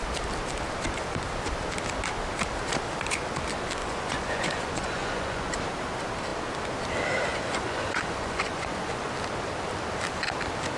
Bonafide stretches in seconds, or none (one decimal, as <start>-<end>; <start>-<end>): 0.0-3.8; 5.5-7.3; 9.1-10.8